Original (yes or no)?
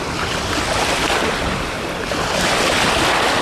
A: yes